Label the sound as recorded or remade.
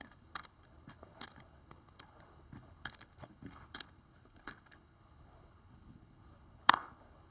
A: remade